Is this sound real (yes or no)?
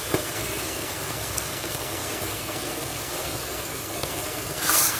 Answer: no